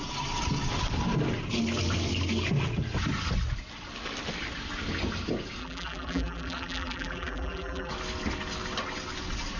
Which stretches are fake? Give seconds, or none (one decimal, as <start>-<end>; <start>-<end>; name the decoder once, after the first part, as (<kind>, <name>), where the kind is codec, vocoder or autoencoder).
5.6-7.9 (vocoder, BigVGAN v2)